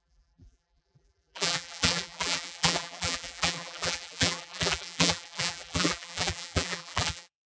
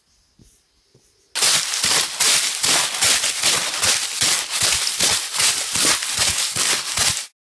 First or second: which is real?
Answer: second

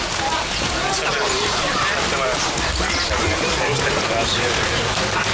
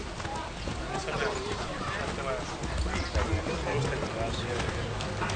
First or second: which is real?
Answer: second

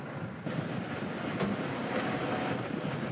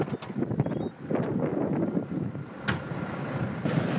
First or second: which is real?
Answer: first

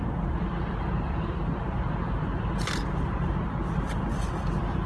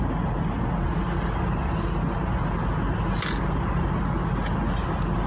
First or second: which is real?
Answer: second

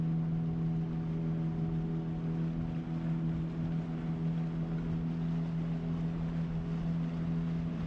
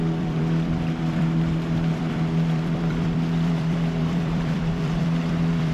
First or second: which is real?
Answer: first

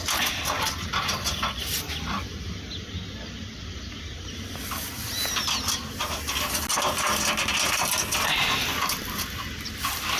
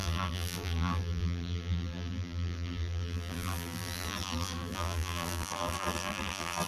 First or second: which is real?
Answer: first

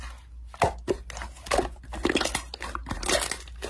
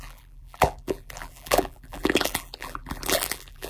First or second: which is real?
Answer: first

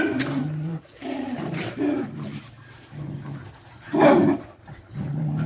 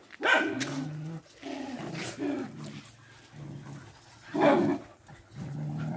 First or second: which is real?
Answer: second